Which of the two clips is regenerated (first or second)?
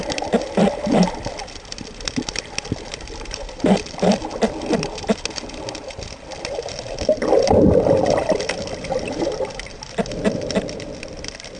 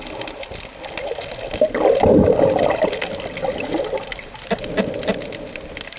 first